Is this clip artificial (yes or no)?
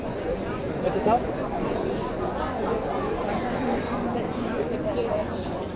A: yes